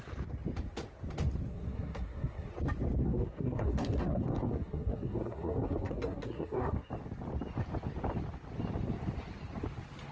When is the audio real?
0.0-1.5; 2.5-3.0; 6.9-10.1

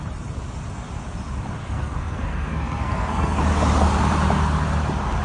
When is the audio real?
0.0-1.6; 3.4-5.2

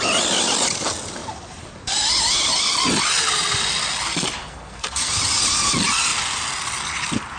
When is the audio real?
0.0-4.4; 5.1-7.4

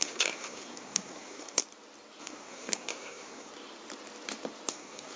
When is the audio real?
1.6-2.2; 3.5-4.7

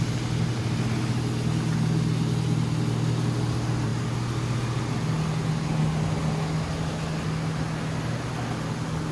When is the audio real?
0.0-9.1

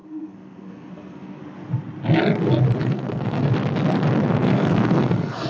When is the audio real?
1.4-2.8; 3.5-4.3